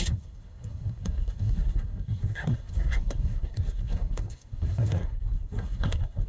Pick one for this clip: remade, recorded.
remade